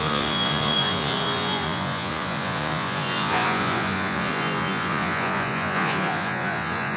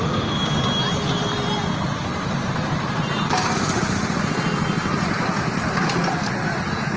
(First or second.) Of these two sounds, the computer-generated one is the first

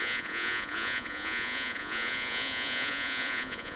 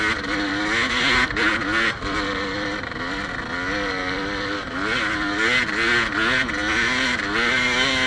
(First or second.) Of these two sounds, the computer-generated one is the first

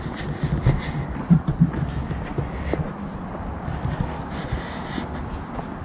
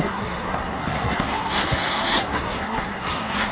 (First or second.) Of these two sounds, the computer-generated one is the second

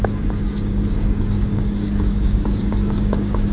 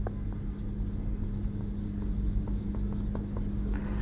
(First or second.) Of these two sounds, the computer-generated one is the first